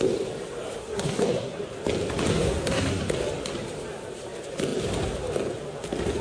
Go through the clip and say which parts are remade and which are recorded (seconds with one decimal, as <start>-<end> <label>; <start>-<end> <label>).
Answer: 0.0-0.8 recorded; 0.8-1.6 remade; 1.6-2.3 recorded; 2.3-3.0 remade; 3.0-6.2 recorded